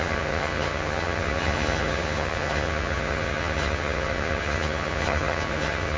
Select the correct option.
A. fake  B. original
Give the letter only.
A